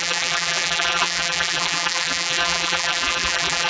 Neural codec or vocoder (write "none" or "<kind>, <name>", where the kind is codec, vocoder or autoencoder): vocoder, BigVGAN v2